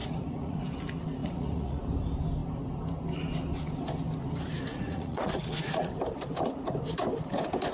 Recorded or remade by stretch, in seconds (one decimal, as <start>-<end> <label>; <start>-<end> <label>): 0.0-0.7 remade; 0.7-1.2 recorded; 1.2-1.8 remade; 1.8-4.7 recorded; 4.7-5.9 remade; 5.9-7.7 recorded